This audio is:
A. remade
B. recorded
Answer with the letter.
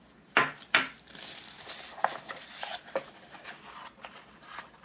B